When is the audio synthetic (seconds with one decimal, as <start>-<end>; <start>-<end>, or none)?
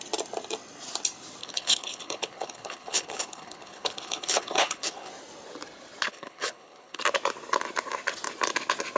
1.4-5.1; 6.1-7.0